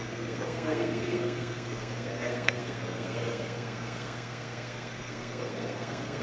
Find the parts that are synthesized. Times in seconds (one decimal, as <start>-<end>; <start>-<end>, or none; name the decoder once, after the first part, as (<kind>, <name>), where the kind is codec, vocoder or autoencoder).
0.0-6.2 (codec, SNAC)

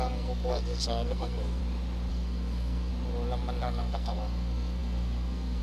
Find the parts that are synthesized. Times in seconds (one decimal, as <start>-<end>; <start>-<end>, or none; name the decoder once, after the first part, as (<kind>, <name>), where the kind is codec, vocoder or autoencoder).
0.0-1.6 (codec, SNAC); 2.1-2.9; 3.6-5.6

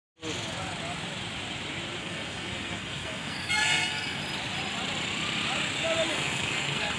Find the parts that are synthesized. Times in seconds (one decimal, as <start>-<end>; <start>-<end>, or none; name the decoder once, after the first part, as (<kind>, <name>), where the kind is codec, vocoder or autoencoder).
2.0-4.2 (codec, SNAC); 6.1-7.0

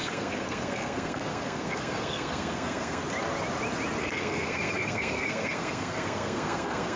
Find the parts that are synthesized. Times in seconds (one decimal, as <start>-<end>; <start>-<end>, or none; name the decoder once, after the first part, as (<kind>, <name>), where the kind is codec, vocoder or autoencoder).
0.0-3.0 (codec, SNAC); 4.0-7.0

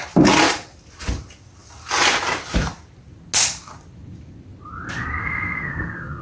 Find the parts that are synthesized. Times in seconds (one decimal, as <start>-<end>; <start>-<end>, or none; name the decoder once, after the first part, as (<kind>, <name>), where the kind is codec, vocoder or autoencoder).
5.2-6.2 (codec, SNAC)

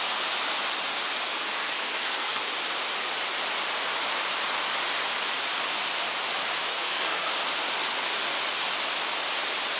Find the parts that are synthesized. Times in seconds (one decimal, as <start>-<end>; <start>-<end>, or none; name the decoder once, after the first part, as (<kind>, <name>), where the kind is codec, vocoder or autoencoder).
1.3-2.4 (codec, SNAC); 6.7-7.3

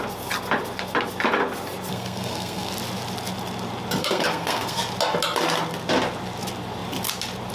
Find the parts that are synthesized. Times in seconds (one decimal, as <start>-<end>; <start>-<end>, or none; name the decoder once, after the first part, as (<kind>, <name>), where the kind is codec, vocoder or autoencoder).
1.9-2.7 (codec, SNAC); 4.0-4.8

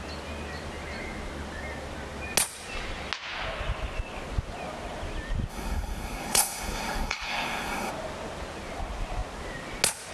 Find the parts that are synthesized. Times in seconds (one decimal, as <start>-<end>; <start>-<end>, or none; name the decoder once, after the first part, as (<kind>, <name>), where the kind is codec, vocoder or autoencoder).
5.5-7.9 (codec, SNAC)